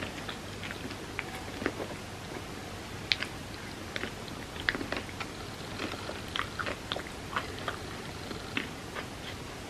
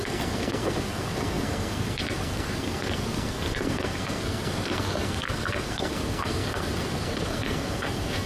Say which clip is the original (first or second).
first